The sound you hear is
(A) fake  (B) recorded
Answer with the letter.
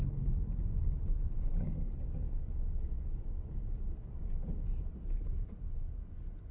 B